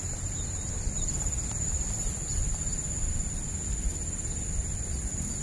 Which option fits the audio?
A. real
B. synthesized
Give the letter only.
A